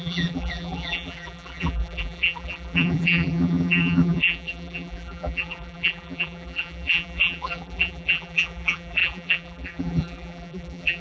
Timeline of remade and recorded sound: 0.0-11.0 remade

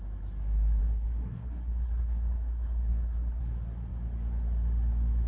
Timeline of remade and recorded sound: 0.0-0.8 recorded; 0.8-3.4 remade; 3.4-5.3 recorded

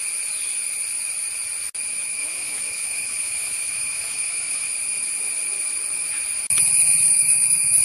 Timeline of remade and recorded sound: 0.0-2.2 recorded; 2.2-4.7 remade; 4.7-7.1 recorded; 7.1-7.8 remade

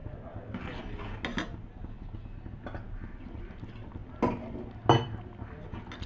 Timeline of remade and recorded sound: 0.0-6.1 recorded

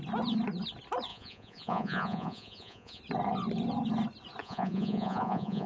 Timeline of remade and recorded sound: 0.0-1.1 recorded; 1.1-3.0 remade; 3.0-4.4 recorded; 4.4-5.7 remade

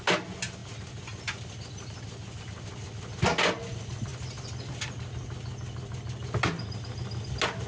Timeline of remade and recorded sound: 0.0-7.7 recorded

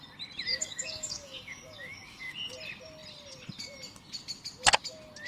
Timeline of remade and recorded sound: 0.0-0.5 recorded; 0.5-2.3 remade; 2.3-5.3 recorded

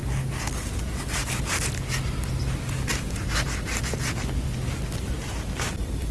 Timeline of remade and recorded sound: 0.0-6.1 recorded